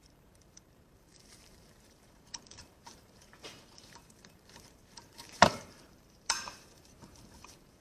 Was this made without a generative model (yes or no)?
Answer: no